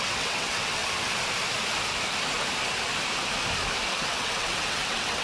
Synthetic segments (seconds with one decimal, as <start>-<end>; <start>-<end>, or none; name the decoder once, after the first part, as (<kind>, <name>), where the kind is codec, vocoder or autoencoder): 0.0-0.8 (vocoder, WaveNeXt); 3.9-5.2